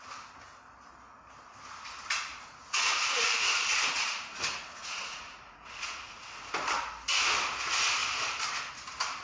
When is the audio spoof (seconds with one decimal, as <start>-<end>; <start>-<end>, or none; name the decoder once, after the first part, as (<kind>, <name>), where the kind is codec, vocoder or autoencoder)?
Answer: 2.3-6.3 (vocoder, Vocos)